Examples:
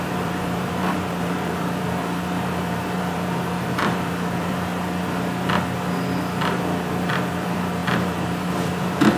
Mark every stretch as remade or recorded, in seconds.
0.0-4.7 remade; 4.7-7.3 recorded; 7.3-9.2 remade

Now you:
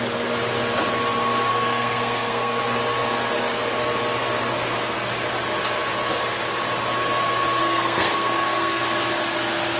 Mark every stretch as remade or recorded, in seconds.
0.0-1.5 recorded; 1.5-2.6 remade; 2.6-7.6 recorded; 7.6-8.8 remade; 8.8-9.8 recorded

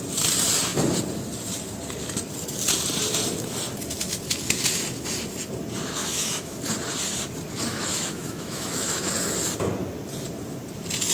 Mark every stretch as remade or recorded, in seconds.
0.0-6.0 recorded; 6.0-6.6 remade; 6.6-7.7 recorded; 7.7-9.1 remade; 9.1-11.1 recorded

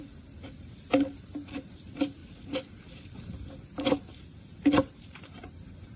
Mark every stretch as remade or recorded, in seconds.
0.0-6.0 remade

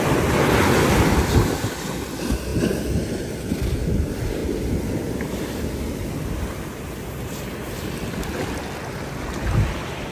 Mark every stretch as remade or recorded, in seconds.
0.0-10.1 recorded

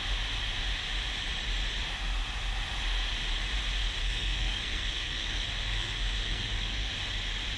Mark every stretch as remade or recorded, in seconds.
0.0-4.0 recorded; 4.0-6.9 remade; 6.9-7.6 recorded

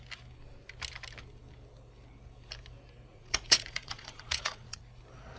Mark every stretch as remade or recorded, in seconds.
0.0-3.1 recorded; 3.1-4.8 remade; 4.8-5.4 recorded